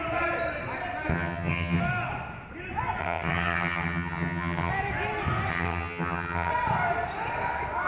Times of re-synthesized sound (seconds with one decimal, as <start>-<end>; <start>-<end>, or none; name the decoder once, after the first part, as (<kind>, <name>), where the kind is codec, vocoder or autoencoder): 1.1-1.8 (vocoder, HiFi-GAN); 3.0-4.7; 5.5-6.5